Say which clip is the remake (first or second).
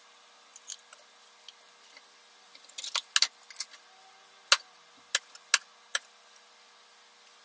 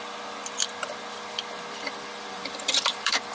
second